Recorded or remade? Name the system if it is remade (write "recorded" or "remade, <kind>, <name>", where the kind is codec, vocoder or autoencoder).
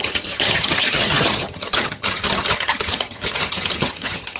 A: remade, vocoder, HiFi-GAN